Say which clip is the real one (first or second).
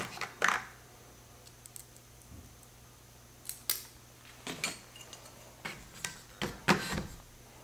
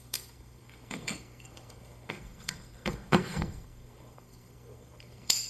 first